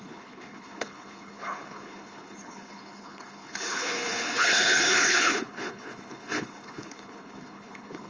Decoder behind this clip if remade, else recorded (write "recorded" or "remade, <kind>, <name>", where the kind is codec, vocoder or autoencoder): remade, codec, HILCodec